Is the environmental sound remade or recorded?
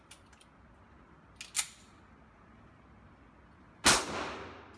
recorded